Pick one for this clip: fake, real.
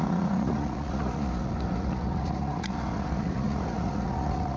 fake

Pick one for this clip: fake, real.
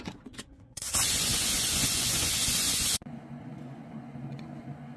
fake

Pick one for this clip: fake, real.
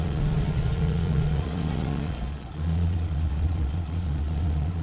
fake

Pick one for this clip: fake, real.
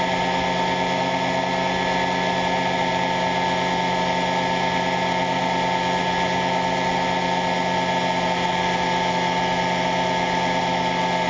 real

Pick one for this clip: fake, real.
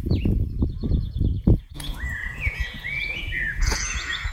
fake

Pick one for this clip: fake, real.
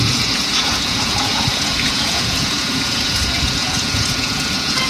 fake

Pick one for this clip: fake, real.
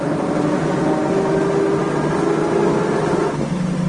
real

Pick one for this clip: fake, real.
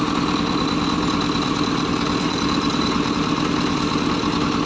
real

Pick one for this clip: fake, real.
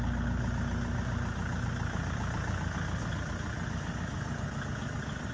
real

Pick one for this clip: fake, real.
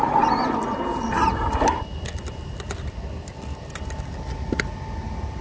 real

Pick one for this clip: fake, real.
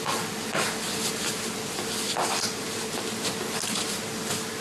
real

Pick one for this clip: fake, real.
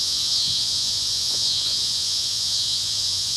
fake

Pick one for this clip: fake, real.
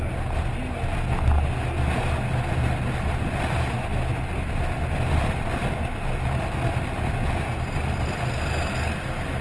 real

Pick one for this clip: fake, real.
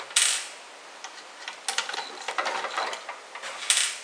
real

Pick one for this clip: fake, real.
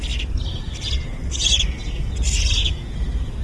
real